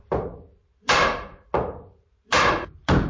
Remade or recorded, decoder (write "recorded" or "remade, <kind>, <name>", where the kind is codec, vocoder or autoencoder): remade, vocoder, BigVGAN v2